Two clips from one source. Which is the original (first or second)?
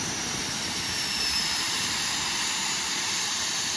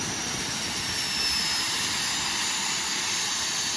second